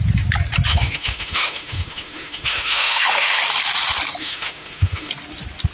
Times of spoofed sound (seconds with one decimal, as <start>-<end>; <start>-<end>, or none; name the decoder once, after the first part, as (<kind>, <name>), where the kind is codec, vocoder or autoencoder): 0.7-3.4 (autoencoder, DAC-VAE); 4.2-5.1